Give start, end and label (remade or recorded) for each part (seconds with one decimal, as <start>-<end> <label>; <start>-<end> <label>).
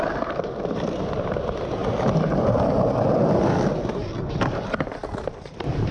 0.0-5.9 recorded